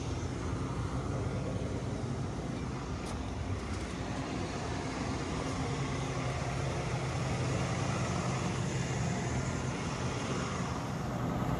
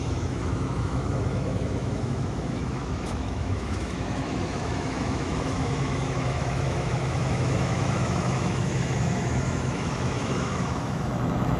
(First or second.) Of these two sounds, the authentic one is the first